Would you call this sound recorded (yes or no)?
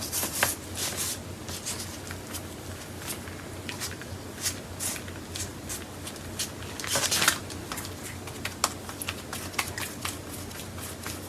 yes